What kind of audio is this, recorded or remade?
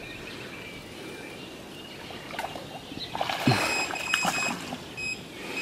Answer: recorded